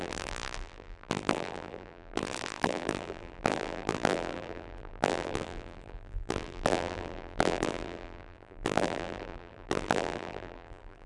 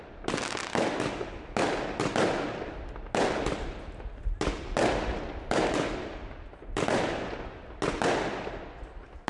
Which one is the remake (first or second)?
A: first